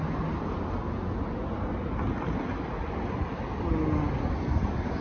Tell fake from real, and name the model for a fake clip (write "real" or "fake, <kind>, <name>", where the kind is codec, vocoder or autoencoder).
real